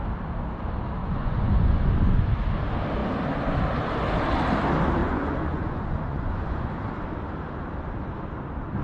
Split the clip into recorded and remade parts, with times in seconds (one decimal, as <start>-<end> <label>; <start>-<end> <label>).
0.0-1.0 recorded; 1.0-2.3 remade; 2.3-5.0 recorded; 5.0-6.7 remade; 6.7-8.8 recorded